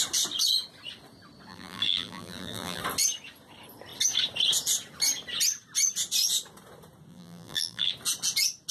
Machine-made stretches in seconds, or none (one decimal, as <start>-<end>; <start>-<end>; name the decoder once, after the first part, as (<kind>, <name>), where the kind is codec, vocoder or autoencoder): 1.5-2.8 (vocoder, BigVGAN v2); 7.1-7.9